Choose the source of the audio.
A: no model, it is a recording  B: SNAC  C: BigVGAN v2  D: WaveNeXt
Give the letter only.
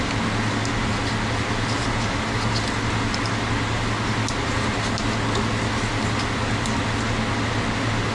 A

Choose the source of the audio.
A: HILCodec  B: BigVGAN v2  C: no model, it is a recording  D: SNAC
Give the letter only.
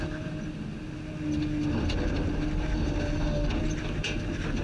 C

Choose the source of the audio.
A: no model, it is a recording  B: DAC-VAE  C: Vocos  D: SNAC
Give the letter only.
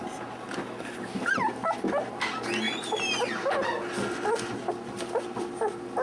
A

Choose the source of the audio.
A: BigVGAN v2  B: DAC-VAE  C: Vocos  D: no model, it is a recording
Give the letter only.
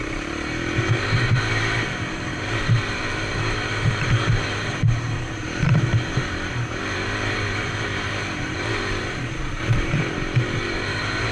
A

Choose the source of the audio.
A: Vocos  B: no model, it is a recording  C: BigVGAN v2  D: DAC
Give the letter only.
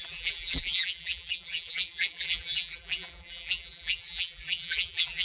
C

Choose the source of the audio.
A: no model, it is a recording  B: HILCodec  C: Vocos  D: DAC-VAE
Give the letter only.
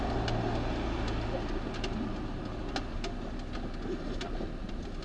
A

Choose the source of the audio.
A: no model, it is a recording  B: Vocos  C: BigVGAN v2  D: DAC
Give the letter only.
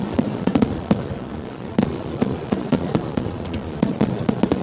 B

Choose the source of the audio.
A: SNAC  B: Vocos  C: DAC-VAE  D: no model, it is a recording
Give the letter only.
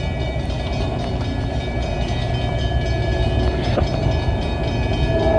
D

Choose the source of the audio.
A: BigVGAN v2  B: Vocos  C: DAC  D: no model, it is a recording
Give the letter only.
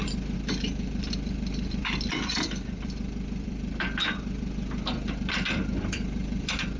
A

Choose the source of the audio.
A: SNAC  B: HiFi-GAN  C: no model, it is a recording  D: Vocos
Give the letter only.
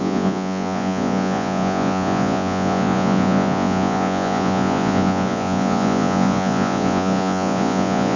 D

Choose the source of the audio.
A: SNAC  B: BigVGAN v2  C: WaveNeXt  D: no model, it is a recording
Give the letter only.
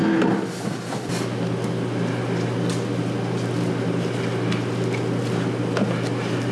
D